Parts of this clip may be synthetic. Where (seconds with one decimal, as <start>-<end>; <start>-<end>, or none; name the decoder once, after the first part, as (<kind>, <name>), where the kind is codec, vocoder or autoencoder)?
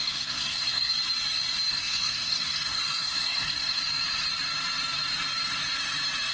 0.0-0.9 (codec, SNAC); 1.7-3.8